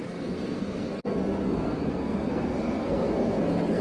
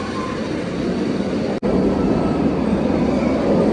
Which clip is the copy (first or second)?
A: first